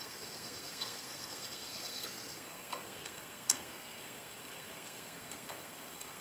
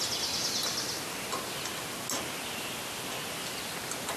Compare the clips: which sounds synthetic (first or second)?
first